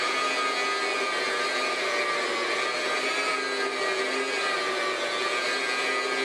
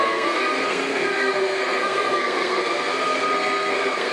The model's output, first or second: second